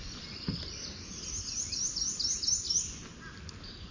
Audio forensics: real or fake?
real